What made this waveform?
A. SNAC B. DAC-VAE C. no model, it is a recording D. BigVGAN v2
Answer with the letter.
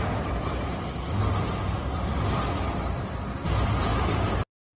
C